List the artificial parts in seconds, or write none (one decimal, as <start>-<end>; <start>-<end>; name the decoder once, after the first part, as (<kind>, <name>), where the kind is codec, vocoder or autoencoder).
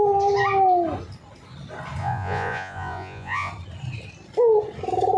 2.0-3.5 (vocoder, Vocos)